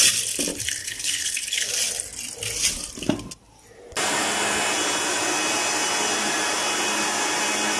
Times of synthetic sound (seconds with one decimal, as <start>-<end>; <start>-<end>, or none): 0.8-1.7